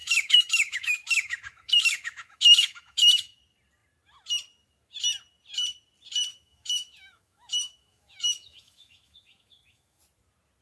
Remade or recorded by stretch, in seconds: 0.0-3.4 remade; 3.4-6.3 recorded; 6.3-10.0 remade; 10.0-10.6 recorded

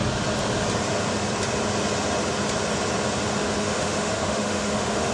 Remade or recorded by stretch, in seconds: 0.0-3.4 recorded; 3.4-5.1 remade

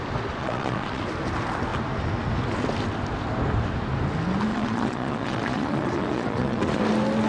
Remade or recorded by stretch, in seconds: 0.0-0.4 recorded; 0.4-1.0 remade; 1.0-4.5 recorded; 4.5-6.8 remade; 6.8-7.3 recorded